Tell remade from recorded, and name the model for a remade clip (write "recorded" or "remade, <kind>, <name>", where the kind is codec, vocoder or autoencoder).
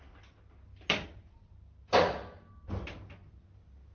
recorded